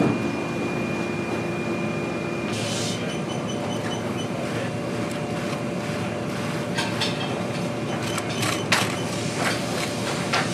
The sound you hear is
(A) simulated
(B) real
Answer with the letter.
B